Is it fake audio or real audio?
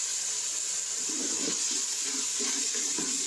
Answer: real